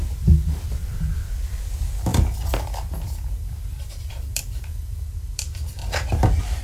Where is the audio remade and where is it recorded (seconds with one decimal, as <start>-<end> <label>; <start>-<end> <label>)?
0.0-5.8 remade; 5.8-6.6 recorded

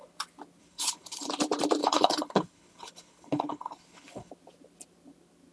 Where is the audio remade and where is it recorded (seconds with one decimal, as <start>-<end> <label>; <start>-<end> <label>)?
0.0-0.6 recorded; 0.6-1.3 remade; 1.3-1.8 recorded; 1.8-4.3 remade; 4.3-5.5 recorded

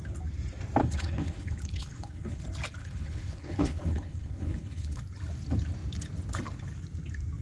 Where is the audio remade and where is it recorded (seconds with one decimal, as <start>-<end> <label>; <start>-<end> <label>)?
0.0-0.8 recorded; 0.8-2.4 remade; 2.4-2.8 recorded; 2.8-5.0 remade; 5.0-7.4 recorded

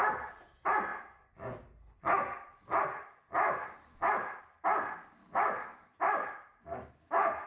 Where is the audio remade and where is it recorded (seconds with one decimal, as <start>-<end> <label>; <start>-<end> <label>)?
0.0-3.6 recorded; 3.6-4.4 remade; 4.4-5.2 recorded; 5.2-7.5 remade

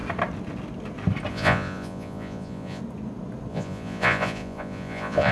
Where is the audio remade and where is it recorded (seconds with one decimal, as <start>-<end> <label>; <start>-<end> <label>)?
0.0-1.3 recorded; 1.3-2.8 remade; 2.8-3.5 recorded; 3.5-5.3 remade